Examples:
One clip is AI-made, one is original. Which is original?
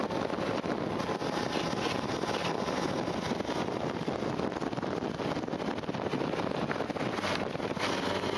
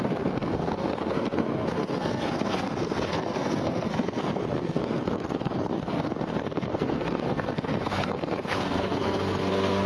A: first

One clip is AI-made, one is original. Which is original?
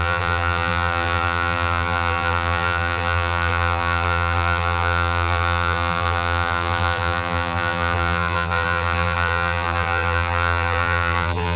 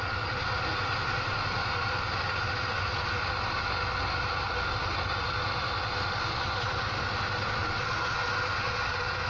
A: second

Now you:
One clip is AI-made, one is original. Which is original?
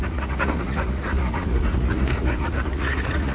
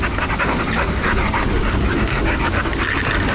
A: second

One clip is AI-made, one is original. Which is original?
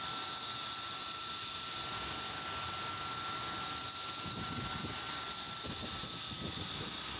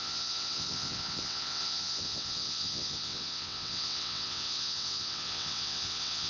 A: first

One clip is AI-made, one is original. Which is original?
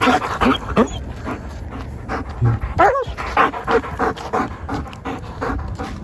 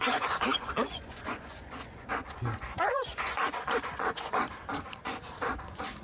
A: first